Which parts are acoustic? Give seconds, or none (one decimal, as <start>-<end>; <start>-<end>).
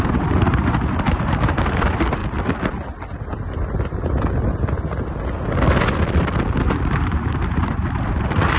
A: 2.2-6.6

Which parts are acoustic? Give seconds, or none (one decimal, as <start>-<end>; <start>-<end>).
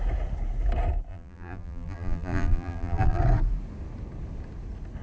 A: 0.0-1.1; 3.2-5.0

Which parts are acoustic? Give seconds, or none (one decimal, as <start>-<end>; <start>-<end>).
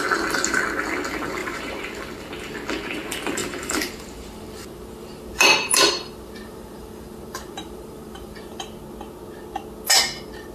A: 0.0-1.4; 1.9-3.4; 8.6-10.5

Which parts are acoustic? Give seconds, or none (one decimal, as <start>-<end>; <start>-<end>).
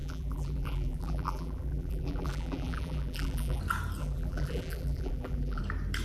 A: 3.6-4.0; 5.6-6.0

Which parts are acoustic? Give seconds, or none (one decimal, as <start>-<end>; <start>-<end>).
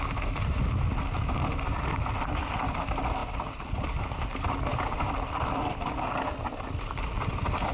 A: 0.0-4.7; 5.9-7.7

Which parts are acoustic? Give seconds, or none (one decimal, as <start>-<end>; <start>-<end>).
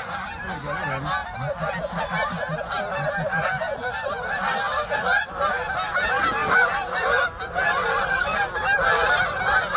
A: 0.0-6.4; 9.4-9.8